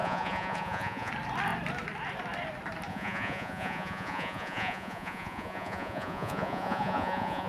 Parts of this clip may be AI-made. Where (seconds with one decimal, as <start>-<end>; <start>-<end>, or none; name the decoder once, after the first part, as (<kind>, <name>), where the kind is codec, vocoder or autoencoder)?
0.0-1.1 (vocoder, Vocos); 2.9-7.5